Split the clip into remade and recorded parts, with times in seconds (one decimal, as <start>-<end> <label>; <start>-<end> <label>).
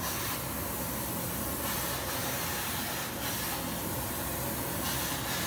0.0-2.2 recorded; 2.2-2.8 remade; 2.8-5.5 recorded